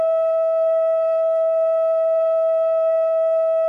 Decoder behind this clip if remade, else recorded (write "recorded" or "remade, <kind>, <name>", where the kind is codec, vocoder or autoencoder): remade, codec, SNAC